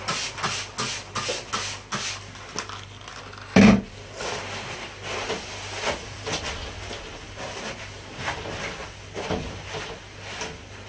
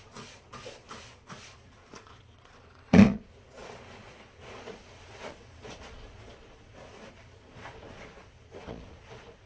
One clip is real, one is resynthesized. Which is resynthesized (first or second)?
second